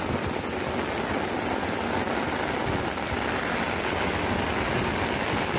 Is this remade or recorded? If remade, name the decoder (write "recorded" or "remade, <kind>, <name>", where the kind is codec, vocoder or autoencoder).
recorded